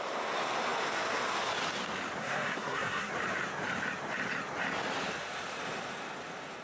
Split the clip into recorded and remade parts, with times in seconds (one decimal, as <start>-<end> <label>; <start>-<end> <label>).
0.0-2.2 recorded; 2.2-3.1 remade; 3.1-6.6 recorded